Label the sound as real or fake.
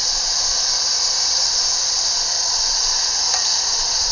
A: real